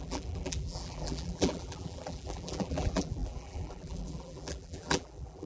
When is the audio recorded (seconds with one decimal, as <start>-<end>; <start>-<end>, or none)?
none